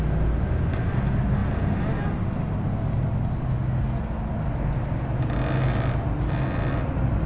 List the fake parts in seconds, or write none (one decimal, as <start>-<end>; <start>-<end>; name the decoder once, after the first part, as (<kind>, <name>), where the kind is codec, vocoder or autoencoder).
none